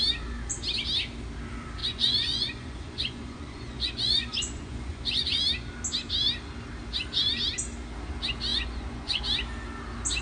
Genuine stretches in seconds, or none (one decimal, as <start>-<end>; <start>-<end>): 0.0-1.8; 5.4-8.5; 9.2-10.2